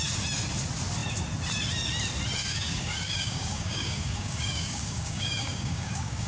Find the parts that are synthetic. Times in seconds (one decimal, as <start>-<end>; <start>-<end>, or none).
2.4-6.3